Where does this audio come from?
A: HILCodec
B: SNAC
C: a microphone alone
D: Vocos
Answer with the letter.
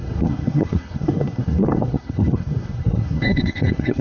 B